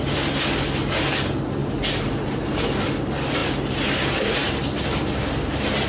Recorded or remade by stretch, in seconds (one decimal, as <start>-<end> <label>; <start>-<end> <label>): 0.0-5.9 recorded